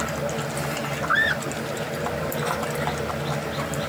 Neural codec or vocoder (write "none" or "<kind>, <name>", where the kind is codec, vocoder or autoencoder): none